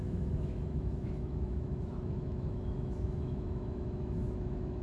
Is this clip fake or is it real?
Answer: fake